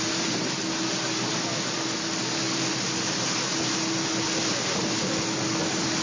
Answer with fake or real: real